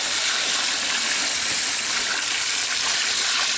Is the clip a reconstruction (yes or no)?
no